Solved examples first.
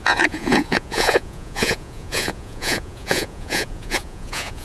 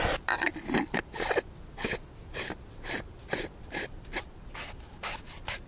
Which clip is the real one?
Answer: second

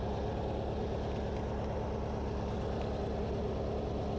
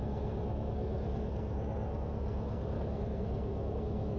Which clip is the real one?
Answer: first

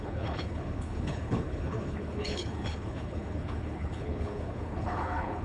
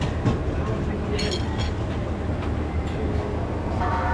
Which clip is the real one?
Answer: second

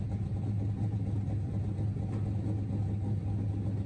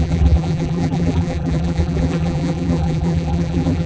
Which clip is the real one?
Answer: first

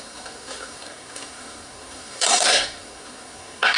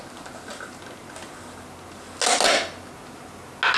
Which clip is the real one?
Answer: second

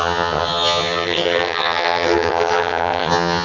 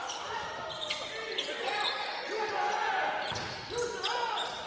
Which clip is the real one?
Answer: second